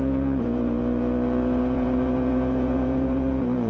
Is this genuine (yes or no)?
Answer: no